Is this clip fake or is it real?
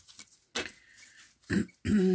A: real